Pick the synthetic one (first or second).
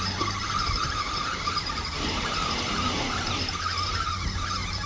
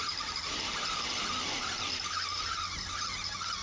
first